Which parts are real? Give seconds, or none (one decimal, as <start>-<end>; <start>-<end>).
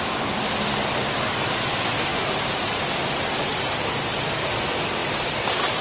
0.0-2.1; 2.8-3.5; 4.5-5.0